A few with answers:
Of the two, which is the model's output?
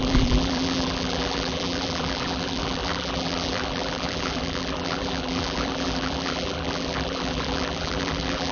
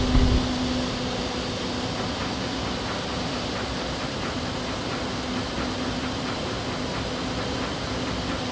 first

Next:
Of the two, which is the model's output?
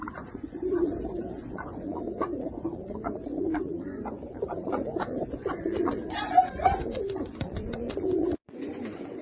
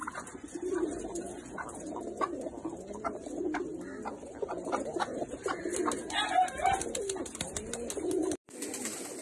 first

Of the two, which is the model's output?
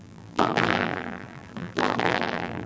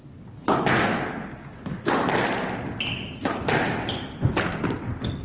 first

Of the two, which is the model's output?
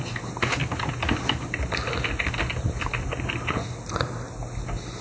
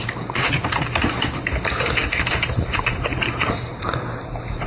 second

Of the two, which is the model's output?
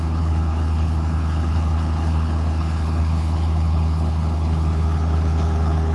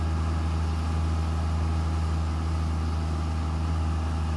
first